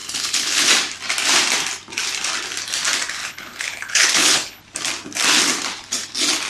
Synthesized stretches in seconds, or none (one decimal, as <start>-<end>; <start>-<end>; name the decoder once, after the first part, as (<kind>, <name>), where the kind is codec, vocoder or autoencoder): 0.0-0.7 (codec, HILCodec); 3.2-4.6